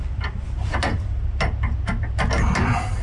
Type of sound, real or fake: real